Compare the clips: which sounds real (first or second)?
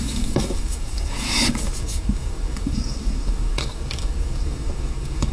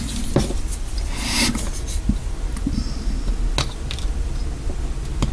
second